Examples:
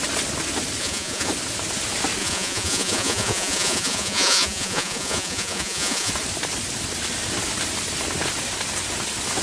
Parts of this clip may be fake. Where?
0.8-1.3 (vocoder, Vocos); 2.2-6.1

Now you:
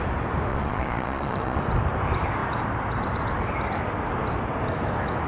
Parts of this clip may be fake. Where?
0.5-1.6 (vocoder, Vocos)